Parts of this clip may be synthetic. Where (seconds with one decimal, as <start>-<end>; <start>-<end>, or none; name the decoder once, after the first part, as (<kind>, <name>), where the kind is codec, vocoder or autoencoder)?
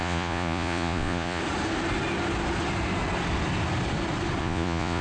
0.0-1.4 (vocoder, Vocos); 4.4-5.0